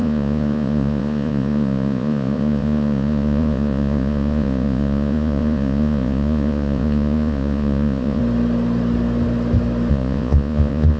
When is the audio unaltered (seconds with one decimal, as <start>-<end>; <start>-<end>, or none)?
8.2-9.9